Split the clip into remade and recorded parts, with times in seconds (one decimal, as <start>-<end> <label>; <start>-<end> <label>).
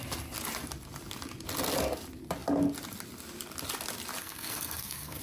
0.0-4.2 recorded; 4.2-5.2 remade